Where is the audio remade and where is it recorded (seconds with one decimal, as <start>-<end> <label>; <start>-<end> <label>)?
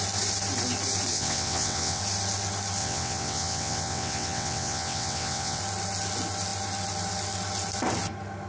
0.0-1.1 recorded; 1.1-2.0 remade; 2.0-2.8 recorded; 2.8-5.6 remade; 5.6-8.5 recorded